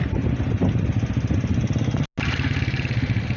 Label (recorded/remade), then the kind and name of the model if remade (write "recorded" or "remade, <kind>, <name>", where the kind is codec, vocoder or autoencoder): recorded